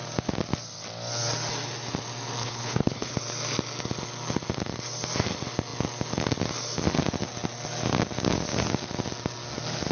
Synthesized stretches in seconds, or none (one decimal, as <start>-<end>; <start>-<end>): 2.4-3.1